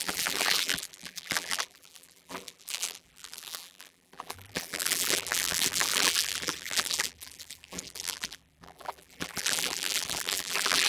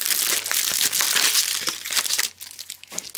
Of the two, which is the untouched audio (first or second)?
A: second